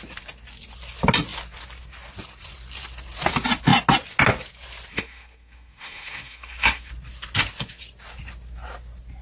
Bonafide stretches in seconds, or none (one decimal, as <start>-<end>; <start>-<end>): 0.0-4.9; 6.9-9.2